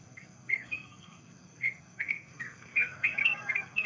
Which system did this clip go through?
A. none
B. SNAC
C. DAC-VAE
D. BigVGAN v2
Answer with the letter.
B